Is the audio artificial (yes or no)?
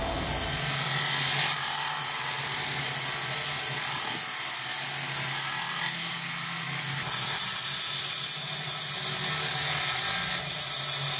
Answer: no